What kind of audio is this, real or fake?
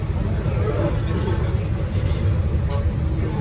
real